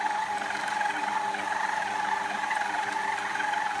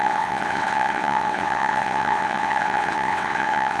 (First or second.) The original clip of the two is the first